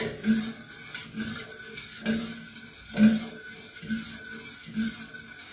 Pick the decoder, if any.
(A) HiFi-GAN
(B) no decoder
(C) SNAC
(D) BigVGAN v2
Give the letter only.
B